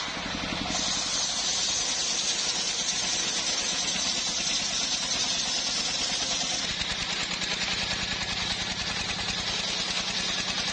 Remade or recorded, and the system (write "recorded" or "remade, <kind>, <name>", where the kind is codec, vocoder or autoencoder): recorded